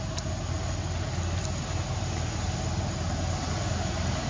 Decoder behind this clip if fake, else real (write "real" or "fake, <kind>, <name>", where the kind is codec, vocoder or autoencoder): real